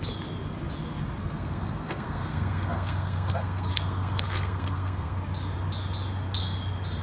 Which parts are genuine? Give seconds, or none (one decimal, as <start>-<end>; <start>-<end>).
0.0-1.2; 5.2-7.0